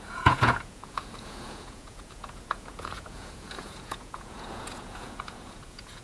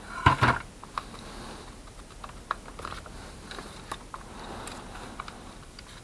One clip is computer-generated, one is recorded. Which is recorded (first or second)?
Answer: second